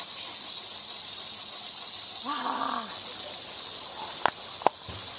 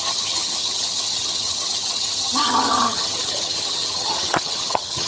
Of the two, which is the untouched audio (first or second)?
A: first